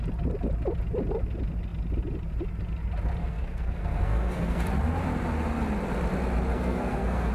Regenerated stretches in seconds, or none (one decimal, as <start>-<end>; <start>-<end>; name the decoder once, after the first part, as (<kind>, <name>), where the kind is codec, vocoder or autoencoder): 3.2-4.6 (codec, SNAC); 6.5-7.3